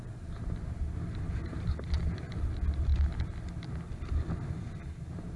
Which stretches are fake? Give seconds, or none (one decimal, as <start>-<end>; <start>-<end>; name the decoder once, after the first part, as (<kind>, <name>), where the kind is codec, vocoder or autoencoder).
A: none